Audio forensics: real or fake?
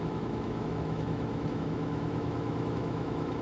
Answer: fake